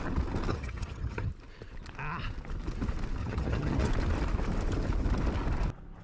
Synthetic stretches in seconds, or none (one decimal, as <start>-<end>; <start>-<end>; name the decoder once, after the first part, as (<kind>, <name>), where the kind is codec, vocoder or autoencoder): 0.5-1.3 (vocoder, HiFi-GAN); 3.2-3.9